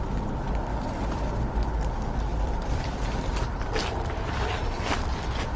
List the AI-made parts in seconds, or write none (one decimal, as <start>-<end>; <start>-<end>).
0.7-1.3; 2.3-3.4